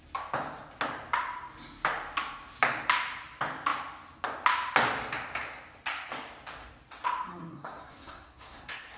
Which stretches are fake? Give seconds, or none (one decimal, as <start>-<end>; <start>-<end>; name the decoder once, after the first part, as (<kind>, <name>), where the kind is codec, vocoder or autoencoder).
7.3-9.0 (codec, SNAC)

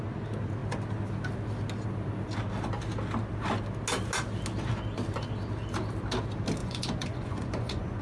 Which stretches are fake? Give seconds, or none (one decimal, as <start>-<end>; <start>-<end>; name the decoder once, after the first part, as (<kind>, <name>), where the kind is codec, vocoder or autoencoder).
6.6-8.0 (vocoder, Vocos)

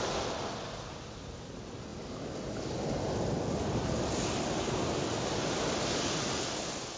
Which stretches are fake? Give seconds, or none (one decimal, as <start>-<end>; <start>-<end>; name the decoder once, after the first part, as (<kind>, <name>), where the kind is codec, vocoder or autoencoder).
none

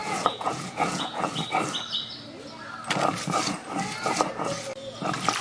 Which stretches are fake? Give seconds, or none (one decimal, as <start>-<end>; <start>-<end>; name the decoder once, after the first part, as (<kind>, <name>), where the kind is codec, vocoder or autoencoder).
0.0-1.3 (vocoder, Vocos)